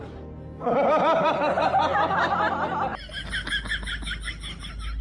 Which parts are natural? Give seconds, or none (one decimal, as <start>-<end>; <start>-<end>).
0.0-5.0